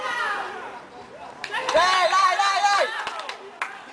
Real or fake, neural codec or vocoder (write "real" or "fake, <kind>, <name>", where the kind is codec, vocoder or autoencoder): real